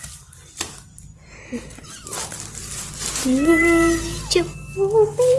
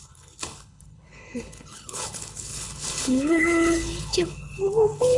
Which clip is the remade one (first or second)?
second